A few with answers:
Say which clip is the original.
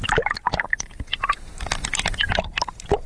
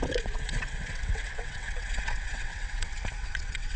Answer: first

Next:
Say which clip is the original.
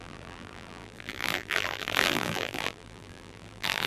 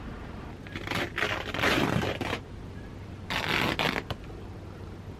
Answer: second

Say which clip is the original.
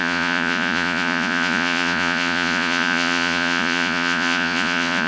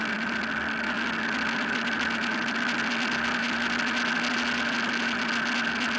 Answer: second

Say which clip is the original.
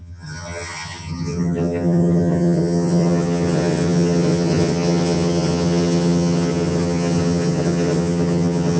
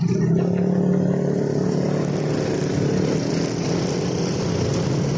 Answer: second